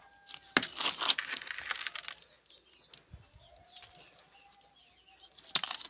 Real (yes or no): yes